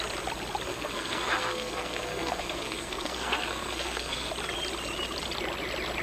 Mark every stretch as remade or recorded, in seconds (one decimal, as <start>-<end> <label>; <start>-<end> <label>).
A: 0.0-0.7 recorded; 0.7-4.3 remade; 4.3-6.0 recorded